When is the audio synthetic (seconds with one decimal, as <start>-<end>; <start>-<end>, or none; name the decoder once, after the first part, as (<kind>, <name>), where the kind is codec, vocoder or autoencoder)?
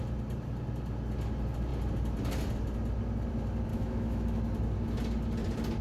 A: 3.7-4.4 (autoencoder, DAC-VAE)